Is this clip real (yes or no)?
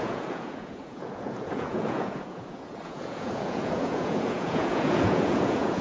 no